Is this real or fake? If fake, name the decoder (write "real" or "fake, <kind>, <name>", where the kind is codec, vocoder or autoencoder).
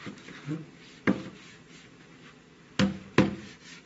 real